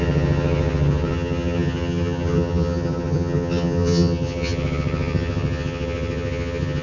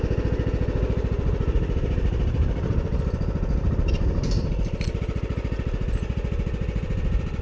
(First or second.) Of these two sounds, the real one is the second